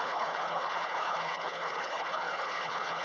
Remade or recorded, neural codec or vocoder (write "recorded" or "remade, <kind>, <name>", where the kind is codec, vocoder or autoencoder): remade, codec, HILCodec